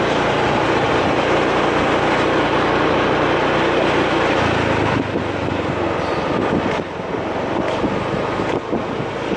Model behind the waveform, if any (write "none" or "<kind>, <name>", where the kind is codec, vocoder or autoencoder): none